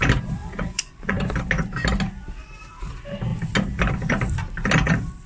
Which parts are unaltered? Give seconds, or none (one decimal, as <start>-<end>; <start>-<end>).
0.0-0.4; 1.2-5.3

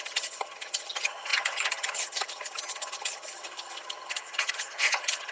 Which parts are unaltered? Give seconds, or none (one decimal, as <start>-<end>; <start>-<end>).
none

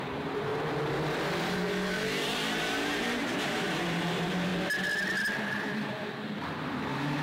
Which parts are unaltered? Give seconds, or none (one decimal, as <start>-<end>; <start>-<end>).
0.5-1.4; 4.5-5.4

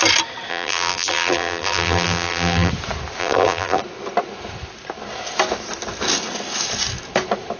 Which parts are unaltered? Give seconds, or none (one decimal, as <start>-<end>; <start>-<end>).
0.0-0.5; 2.7-3.2; 3.8-7.6

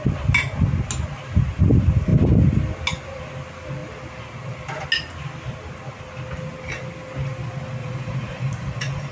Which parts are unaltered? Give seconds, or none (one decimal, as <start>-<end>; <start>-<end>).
0.0-7.8

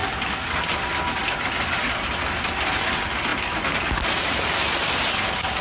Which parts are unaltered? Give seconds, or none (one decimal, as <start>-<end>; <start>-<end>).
0.0-5.6